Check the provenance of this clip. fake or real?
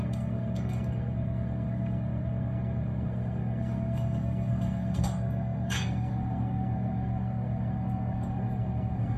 fake